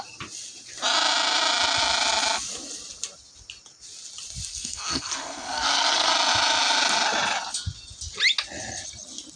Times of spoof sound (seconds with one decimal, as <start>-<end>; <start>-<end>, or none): 4.5-6.1